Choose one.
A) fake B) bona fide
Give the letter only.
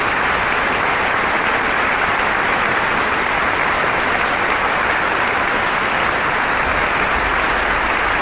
B